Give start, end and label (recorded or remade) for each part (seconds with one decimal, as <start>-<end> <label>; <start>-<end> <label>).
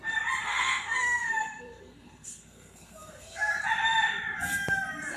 0.0-0.4 recorded; 0.4-3.5 remade; 3.5-5.2 recorded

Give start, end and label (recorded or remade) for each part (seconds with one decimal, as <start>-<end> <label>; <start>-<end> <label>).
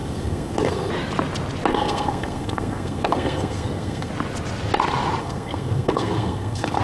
0.0-0.9 remade; 0.9-1.7 recorded; 1.7-4.1 remade; 4.1-5.2 recorded; 5.2-6.8 remade